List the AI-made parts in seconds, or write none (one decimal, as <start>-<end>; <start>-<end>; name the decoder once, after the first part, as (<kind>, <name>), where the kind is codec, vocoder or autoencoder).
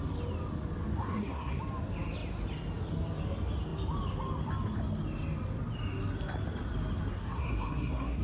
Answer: 1.0-1.6 (codec, SNAC); 7.1-8.2